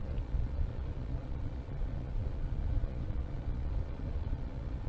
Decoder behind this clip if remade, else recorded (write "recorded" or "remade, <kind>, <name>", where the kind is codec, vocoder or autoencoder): remade, vocoder, Vocos